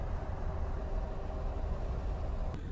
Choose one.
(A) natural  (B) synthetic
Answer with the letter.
A